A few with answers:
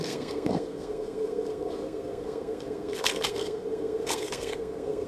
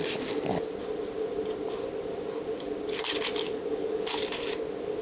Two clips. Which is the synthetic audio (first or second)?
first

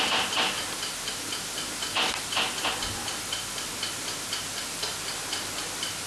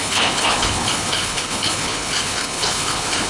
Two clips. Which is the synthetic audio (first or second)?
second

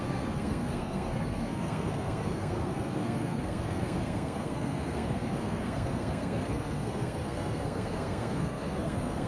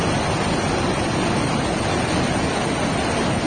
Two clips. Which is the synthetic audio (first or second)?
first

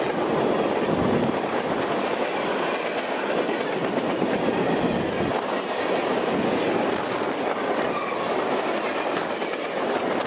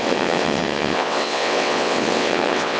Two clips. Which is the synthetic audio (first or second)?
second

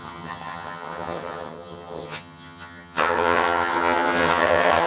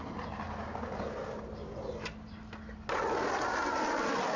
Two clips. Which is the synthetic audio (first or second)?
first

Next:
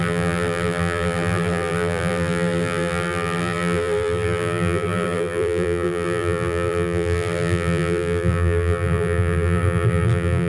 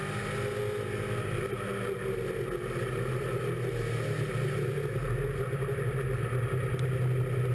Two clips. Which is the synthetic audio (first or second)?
first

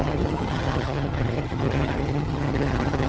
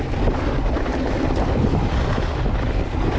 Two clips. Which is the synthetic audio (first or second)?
first